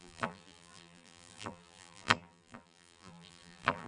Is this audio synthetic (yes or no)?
yes